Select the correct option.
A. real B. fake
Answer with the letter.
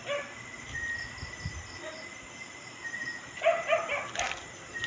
B